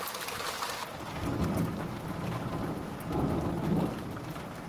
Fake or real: real